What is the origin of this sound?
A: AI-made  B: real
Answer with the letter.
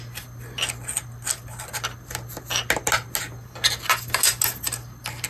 B